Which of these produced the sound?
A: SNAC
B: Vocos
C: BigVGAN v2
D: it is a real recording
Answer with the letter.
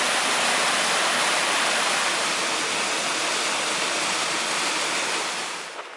D